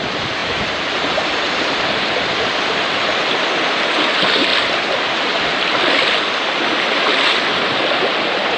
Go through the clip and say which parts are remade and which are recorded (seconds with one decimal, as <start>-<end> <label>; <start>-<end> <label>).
0.0-0.4 recorded; 0.4-2.8 remade; 2.8-8.6 recorded